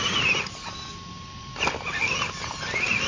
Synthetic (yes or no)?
no